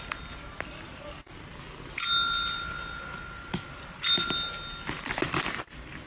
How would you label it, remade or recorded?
recorded